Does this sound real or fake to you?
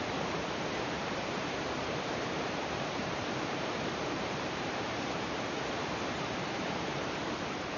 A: fake